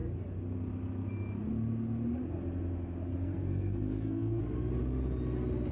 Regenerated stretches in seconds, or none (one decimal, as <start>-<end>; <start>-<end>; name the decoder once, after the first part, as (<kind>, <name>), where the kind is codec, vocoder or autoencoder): 3.1-4.4 (codec, SNAC)